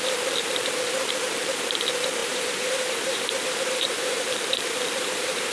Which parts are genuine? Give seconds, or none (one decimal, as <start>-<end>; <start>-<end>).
0.0-2.2